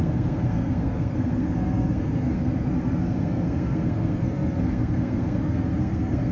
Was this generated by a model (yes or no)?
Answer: yes